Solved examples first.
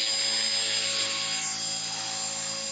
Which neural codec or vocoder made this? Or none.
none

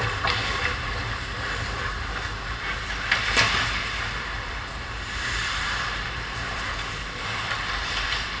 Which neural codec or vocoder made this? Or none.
vocoder, BigVGAN v2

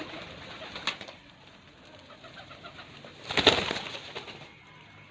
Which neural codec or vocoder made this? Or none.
none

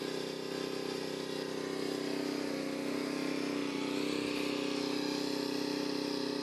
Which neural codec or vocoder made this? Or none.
none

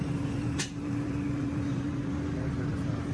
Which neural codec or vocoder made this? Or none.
vocoder, BigVGAN v2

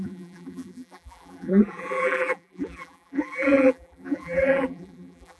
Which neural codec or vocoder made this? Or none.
vocoder, BigVGAN v2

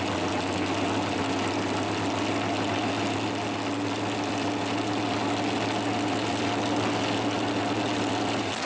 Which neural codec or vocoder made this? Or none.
none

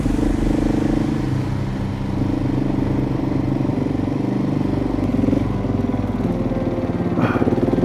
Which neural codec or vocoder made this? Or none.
none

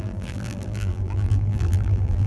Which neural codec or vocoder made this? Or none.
vocoder, BigVGAN v2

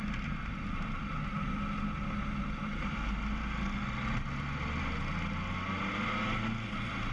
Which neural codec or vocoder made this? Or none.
none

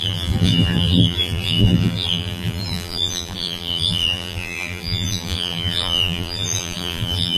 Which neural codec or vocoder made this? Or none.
vocoder, BigVGAN v2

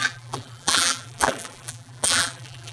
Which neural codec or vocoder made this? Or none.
vocoder, BigVGAN v2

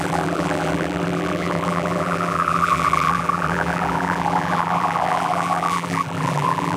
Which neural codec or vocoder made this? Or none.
vocoder, BigVGAN v2